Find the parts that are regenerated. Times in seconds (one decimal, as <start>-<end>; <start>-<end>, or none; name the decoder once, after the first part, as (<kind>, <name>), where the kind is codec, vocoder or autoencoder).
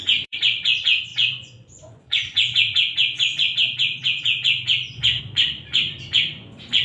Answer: 0.0-6.8 (vocoder, Vocos)